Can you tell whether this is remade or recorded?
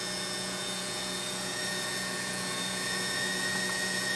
remade